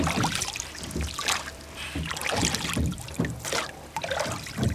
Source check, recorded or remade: remade